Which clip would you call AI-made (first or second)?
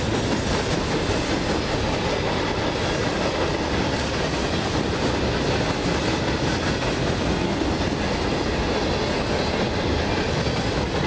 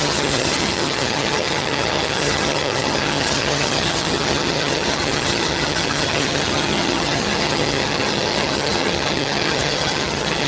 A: second